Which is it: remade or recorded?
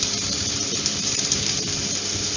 remade